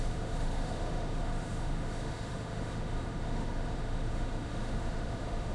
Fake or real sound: fake